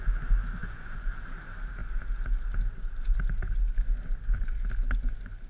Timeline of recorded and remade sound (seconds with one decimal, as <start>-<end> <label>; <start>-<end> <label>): 0.0-0.6 recorded; 0.6-1.1 remade; 1.1-5.5 recorded